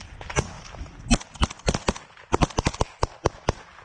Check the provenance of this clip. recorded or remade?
recorded